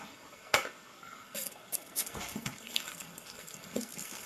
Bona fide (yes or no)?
no